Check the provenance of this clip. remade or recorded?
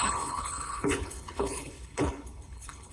remade